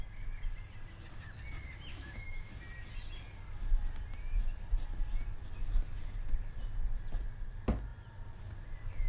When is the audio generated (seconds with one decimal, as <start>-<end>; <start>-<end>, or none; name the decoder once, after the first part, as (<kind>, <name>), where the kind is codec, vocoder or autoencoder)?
1.9-2.5 (autoencoder, DAC-VAE)